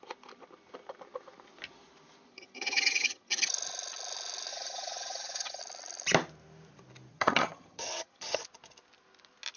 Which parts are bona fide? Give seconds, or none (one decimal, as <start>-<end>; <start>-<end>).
0.0-2.3; 3.3-4.5; 5.6-7.1; 8.4-9.6